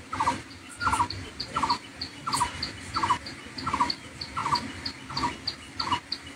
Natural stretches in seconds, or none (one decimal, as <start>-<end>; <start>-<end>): 4.4-5.9